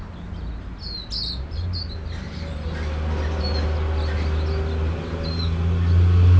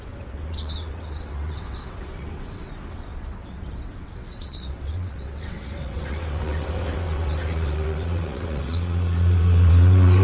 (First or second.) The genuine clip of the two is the first